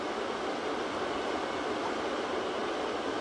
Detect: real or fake real